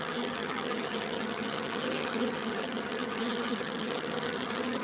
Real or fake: fake